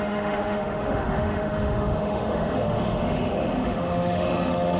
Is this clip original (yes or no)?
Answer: no